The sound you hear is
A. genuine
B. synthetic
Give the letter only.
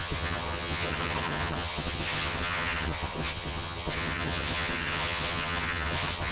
B